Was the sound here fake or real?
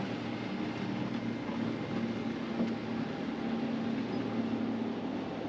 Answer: real